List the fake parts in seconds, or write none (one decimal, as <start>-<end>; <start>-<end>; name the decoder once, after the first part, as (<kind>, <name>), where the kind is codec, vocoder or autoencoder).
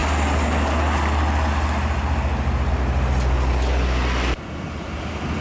none